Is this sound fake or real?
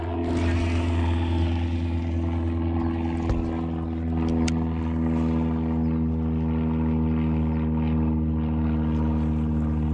real